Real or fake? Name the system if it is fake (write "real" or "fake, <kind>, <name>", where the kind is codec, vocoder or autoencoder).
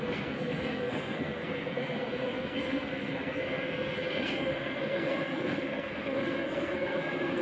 fake, codec, SNAC